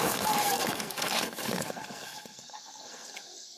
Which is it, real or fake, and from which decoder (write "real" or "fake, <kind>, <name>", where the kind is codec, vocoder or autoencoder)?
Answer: fake, codec, SNAC